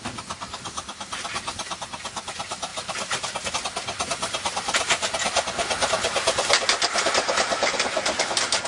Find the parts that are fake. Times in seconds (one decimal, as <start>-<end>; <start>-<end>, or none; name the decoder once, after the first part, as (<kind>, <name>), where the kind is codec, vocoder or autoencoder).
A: none